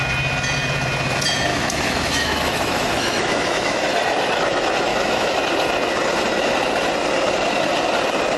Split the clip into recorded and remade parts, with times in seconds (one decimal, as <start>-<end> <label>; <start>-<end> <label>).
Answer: 0.0-1.5 recorded; 1.5-3.8 remade; 3.8-4.9 recorded; 4.9-5.4 remade; 5.4-8.4 recorded